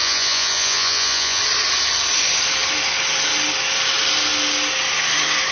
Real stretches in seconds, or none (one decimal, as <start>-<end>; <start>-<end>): 1.4-5.5